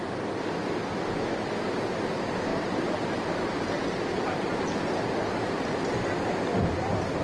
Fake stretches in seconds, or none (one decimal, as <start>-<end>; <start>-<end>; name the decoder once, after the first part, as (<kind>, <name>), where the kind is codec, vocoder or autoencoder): 2.5-3.4 (vocoder, BigVGAN v2)